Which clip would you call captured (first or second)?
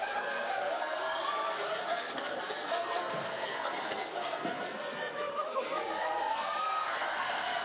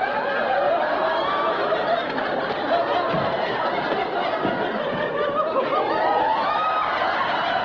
second